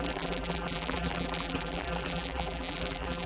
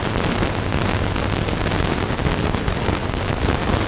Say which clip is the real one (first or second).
second